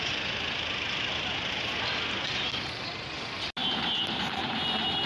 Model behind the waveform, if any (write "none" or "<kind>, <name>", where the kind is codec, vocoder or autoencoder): none